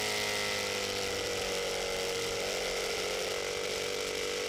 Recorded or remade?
recorded